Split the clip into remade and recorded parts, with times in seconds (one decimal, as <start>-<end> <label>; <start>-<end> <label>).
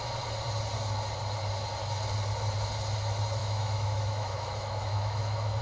0.0-3.4 recorded; 3.4-5.6 remade